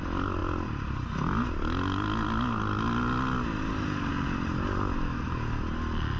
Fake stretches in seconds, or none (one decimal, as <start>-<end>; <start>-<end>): none